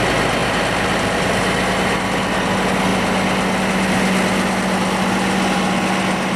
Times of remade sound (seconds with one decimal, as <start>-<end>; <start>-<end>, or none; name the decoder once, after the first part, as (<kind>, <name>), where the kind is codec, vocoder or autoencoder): none